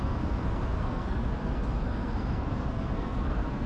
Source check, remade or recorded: remade